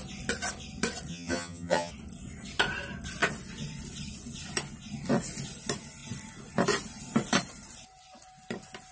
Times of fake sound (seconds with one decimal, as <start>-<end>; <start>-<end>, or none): 1.1-1.9